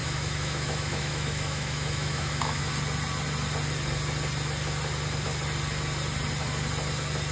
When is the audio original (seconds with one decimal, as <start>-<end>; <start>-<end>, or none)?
2.6-7.3